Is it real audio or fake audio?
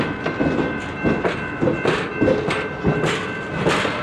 real